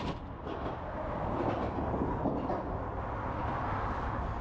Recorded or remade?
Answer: recorded